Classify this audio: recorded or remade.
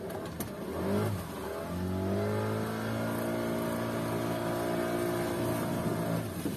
recorded